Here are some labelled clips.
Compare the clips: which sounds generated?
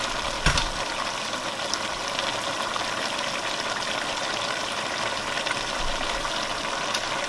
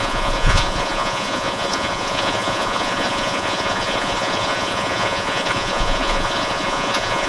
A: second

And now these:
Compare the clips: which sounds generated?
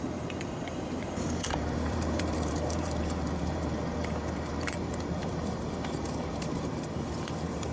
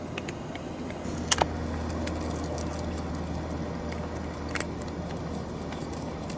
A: first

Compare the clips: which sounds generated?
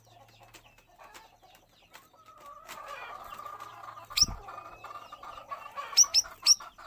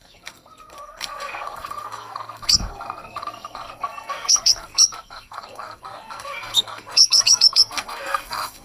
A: second